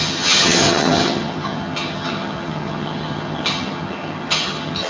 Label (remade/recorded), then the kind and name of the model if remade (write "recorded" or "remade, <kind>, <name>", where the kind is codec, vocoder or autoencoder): remade, vocoder, HiFi-GAN